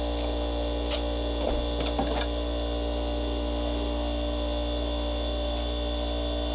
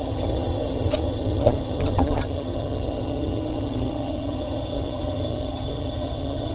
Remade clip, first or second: second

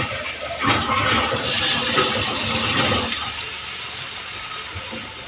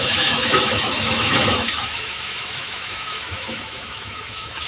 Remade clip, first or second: second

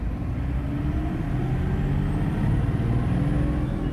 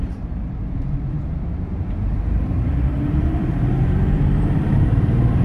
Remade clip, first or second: second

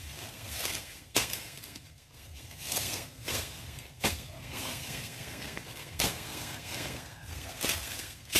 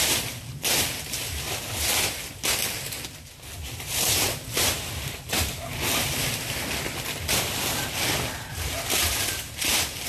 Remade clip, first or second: first